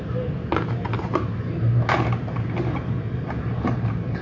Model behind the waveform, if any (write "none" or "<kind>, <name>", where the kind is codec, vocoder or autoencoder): none